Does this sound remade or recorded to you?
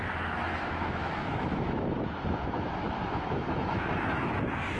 remade